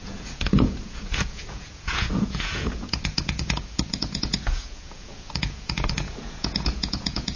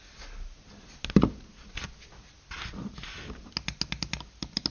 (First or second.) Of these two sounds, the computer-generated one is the first